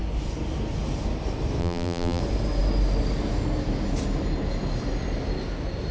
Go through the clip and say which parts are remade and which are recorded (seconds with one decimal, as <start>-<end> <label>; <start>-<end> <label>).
0.0-1.6 recorded; 1.6-2.2 remade; 2.2-5.9 recorded